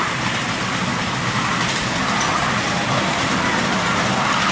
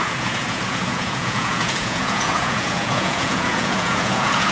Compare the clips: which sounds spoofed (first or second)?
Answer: second